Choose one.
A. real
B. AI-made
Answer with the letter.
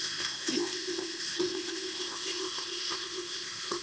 B